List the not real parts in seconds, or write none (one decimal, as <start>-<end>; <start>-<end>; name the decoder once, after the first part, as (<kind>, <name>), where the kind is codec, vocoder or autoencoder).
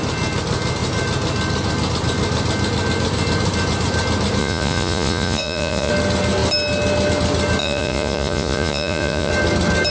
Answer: 4.4-5.9 (vocoder, Vocos); 7.6-9.3